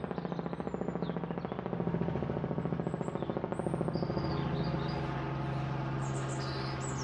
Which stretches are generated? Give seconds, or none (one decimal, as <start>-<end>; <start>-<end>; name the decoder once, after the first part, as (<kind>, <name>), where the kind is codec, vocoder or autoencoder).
none